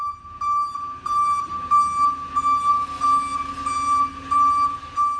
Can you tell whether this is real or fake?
real